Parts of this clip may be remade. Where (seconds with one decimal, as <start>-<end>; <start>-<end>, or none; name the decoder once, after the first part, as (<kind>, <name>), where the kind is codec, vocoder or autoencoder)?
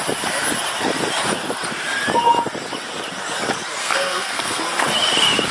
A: 3.8-4.6 (codec, SNAC)